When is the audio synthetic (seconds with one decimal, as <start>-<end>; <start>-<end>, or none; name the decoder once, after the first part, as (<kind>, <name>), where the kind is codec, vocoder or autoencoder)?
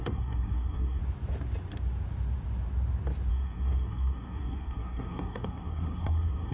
0.0-1.0 (codec, SNAC); 3.3-6.5